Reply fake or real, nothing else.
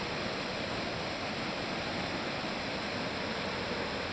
real